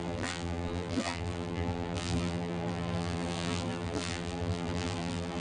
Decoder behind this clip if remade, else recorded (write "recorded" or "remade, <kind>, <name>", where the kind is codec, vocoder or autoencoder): remade, vocoder, BigVGAN v2